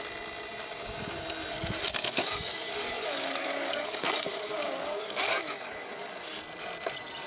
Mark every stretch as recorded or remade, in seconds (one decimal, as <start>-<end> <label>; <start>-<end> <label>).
0.0-2.0 recorded; 2.0-6.4 remade; 6.4-7.3 recorded